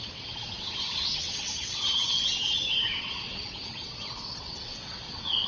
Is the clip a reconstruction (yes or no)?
yes